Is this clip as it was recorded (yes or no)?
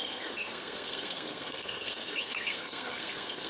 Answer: no